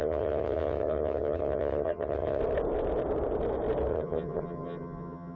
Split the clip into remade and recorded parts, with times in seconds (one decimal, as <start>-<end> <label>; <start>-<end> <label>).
0.0-2.4 remade; 2.4-3.9 recorded; 3.9-5.4 remade